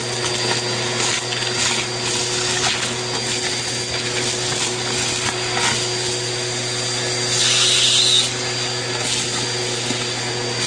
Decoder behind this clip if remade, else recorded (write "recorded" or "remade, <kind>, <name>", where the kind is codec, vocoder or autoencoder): recorded